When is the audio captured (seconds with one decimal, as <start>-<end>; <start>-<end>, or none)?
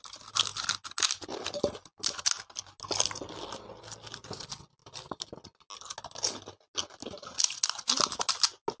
0.0-8.8